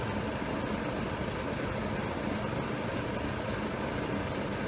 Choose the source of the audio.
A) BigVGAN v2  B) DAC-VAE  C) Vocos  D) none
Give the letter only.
D